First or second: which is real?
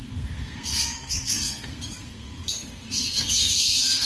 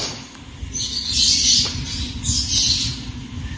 second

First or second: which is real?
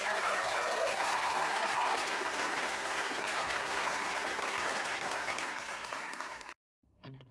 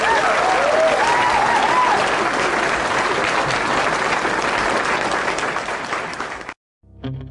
second